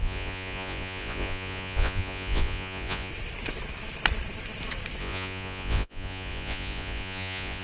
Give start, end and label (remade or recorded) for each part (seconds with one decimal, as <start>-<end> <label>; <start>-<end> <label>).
0.0-3.1 remade; 3.1-5.0 recorded; 5.0-7.6 remade